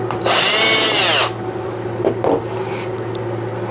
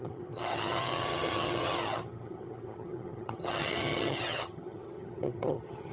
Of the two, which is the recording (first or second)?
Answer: first